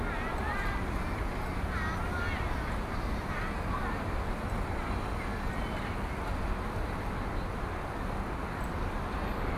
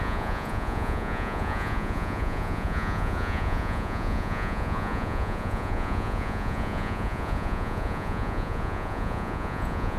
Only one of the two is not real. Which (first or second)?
second